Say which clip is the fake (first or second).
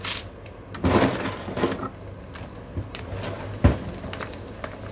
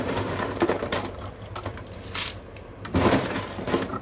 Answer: second